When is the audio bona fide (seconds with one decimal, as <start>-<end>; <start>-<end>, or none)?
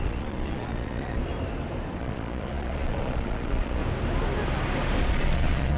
1.2-2.0; 3.8-5.0